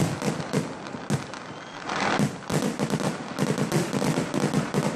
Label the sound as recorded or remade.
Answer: recorded